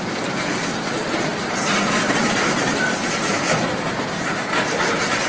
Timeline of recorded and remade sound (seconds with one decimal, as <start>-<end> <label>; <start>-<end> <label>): 0.0-5.3 recorded